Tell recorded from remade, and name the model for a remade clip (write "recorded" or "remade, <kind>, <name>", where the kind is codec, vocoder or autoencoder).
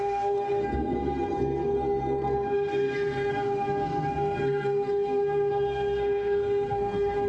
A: remade, codec, SNAC